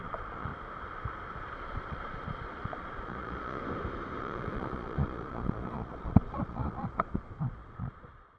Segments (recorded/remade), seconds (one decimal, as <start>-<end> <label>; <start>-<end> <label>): 0.0-0.5 remade; 0.5-1.4 recorded; 1.4-3.6 remade; 3.6-4.2 recorded; 4.2-8.4 remade